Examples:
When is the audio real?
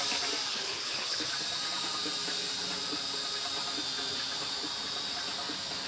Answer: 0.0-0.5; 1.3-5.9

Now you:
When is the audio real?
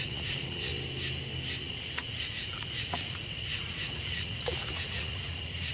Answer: 0.7-1.6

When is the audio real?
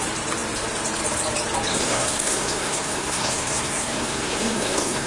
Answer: 0.0-1.7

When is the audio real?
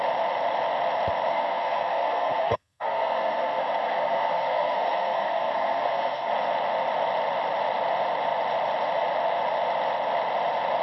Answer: 0.0-1.3; 6.3-10.8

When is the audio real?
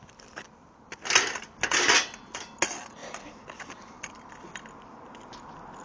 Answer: 0.0-3.0; 4.1-5.8